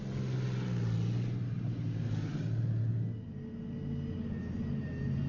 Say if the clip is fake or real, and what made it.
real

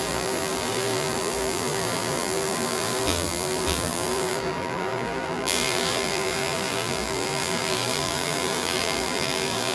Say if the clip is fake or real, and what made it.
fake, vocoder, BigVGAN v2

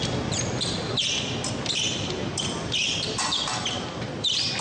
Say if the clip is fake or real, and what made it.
real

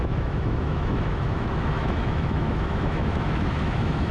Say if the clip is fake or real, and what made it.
fake, autoencoder, DAC-VAE